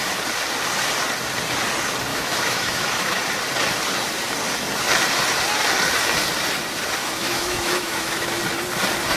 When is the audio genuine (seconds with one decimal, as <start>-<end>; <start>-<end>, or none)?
0.0-2.1; 3.2-7.0; 8.4-9.2